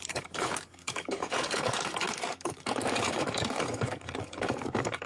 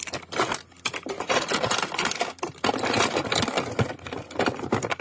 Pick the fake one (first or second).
first